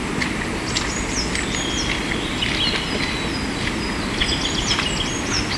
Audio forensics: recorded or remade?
recorded